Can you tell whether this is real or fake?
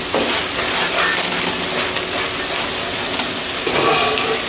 real